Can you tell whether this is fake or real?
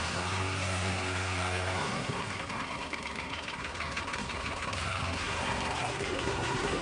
fake